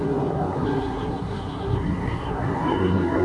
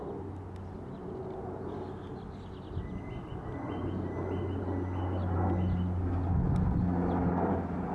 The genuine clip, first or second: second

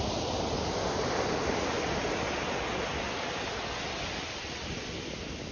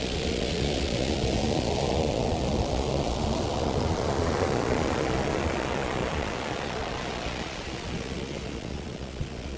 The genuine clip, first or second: first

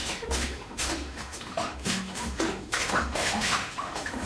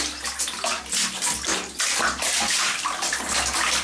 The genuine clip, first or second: second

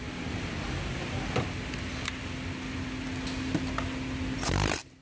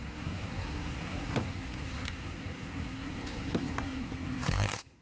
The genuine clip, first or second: first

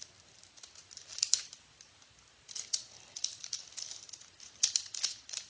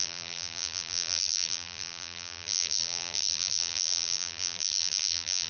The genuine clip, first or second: first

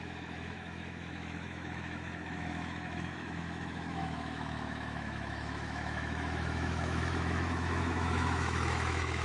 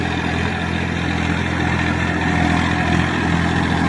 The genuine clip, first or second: second